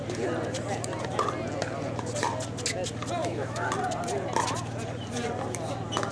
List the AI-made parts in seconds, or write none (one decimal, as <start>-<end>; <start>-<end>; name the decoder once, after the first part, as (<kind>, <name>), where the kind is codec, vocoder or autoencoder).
3.2-3.7 (autoencoder, DAC-VAE)